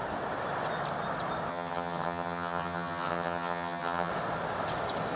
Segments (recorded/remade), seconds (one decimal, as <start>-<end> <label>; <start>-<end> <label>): 0.0-1.5 recorded; 1.5-4.1 remade; 4.1-5.2 recorded